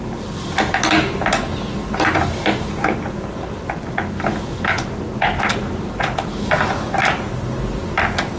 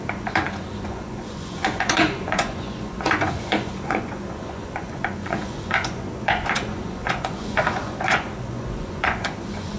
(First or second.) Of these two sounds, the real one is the first